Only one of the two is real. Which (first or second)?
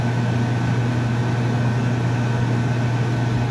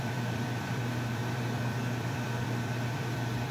first